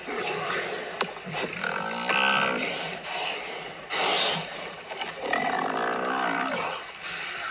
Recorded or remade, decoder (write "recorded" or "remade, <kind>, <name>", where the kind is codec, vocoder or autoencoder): recorded